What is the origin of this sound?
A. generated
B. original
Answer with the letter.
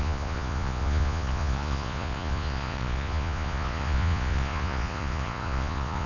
A